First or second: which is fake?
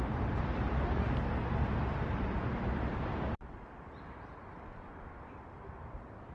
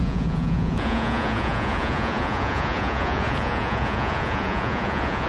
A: second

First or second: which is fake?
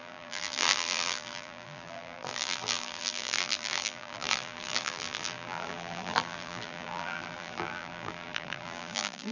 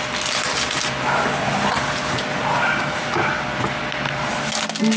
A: first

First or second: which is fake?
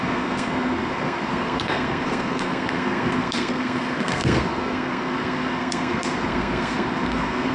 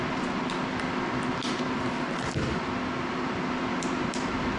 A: first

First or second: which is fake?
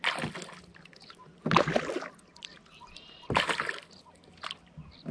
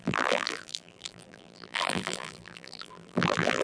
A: second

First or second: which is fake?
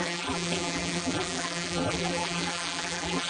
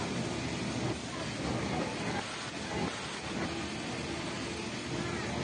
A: first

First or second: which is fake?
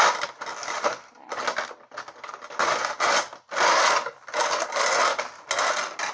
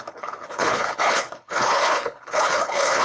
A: second